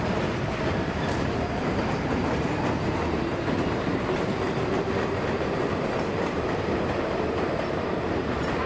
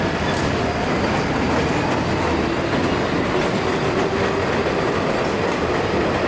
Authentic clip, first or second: second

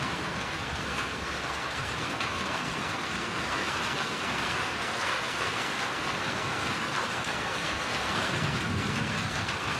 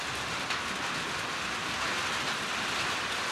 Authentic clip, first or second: second